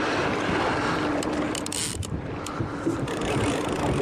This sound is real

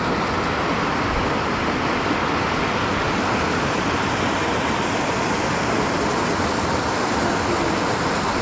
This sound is real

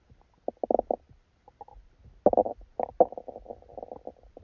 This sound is real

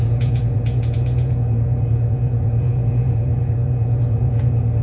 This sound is fake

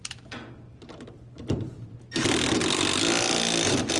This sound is real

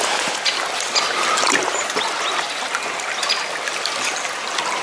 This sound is real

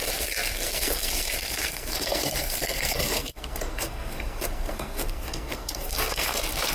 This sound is fake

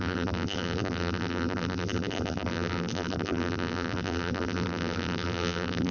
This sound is fake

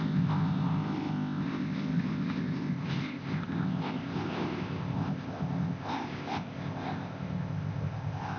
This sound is fake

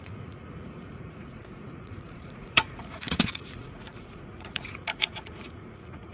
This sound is fake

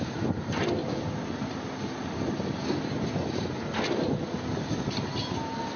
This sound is real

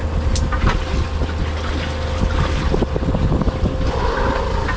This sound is real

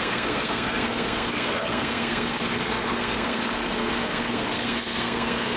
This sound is fake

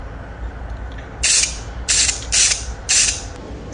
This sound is real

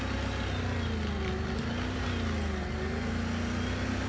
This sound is real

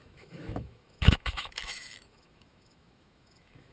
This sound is fake